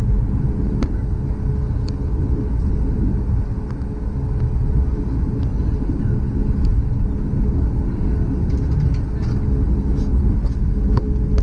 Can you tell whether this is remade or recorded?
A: recorded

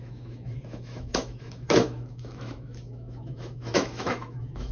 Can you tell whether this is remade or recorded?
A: remade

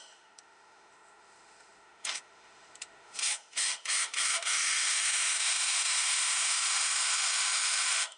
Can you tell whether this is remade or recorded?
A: remade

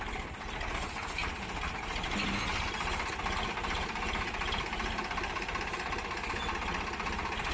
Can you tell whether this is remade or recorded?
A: recorded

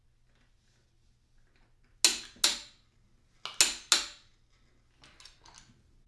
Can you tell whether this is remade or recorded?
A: recorded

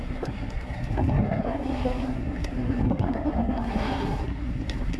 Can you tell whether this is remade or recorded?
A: remade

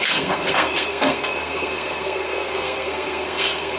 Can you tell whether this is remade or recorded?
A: remade